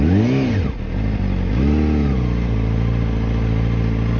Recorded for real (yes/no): yes